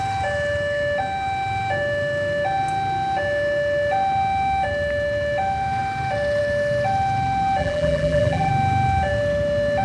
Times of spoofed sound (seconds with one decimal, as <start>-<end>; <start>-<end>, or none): 7.6-8.5

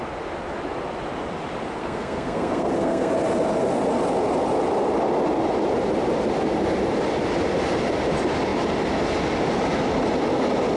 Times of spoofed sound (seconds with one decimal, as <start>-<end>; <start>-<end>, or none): 1.8-3.1

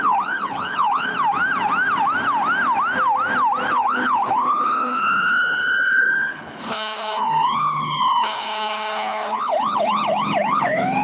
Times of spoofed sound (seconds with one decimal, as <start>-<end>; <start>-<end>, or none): 0.0-1.1; 3.7-11.0

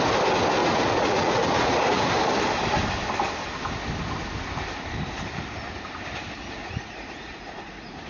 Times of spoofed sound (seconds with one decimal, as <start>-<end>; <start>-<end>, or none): 0.6-2.1; 6.6-8.1

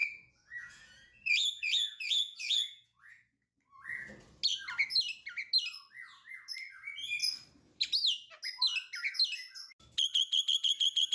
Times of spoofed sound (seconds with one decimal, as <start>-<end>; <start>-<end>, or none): 0.0-3.1

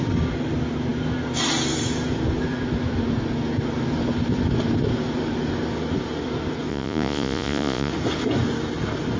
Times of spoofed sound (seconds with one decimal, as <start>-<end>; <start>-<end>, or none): 6.7-7.9

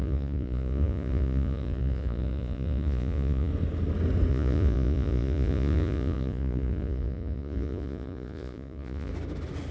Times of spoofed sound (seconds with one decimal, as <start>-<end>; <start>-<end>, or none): 0.0-3.5; 4.3-9.1

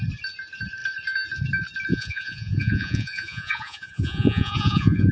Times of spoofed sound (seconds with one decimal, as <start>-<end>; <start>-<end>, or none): 1.9-5.1